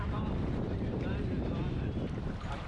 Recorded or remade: remade